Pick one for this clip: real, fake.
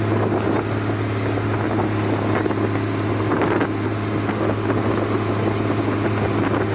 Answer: real